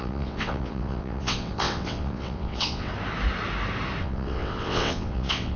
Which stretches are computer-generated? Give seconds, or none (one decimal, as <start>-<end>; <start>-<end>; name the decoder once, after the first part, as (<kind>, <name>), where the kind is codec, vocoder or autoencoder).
0.0-2.9 (vocoder, WaveNeXt); 4.0-5.6